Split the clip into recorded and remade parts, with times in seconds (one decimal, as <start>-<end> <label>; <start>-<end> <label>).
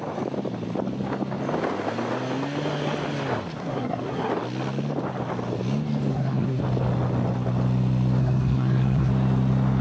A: 0.0-3.6 recorded; 3.6-4.3 remade; 4.3-6.1 recorded; 6.1-6.6 remade; 6.6-8.2 recorded; 8.2-9.1 remade; 9.1-9.8 recorded